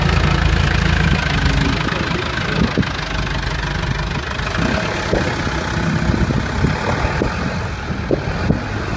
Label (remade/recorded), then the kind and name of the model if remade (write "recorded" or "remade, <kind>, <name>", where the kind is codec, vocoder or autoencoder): recorded